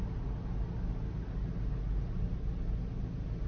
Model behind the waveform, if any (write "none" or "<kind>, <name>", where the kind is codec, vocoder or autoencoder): none